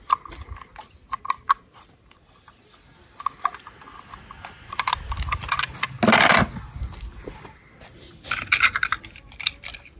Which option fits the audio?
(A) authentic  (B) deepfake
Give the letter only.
A